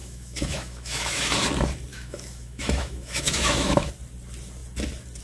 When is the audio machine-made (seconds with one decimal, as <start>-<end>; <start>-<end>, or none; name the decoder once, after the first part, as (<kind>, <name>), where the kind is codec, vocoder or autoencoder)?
0.0-1.3 (autoencoder, DAC-VAE); 1.9-3.9